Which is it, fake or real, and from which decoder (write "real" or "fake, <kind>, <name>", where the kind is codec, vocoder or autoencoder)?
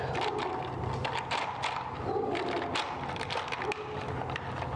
real